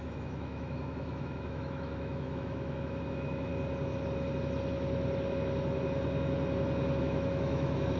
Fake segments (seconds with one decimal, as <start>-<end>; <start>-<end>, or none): 0.0-3.5; 7.0-8.0